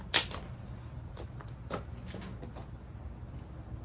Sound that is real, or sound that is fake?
real